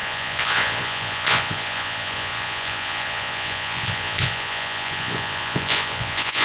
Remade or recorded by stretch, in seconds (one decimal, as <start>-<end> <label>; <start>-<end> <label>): 0.0-6.4 remade